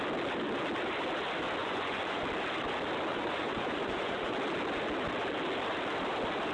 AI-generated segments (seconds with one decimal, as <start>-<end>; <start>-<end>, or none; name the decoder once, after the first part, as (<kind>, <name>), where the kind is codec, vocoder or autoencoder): 1.6-2.2 (vocoder, Vocos); 3.1-4.4